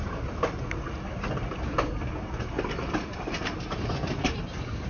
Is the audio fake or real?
real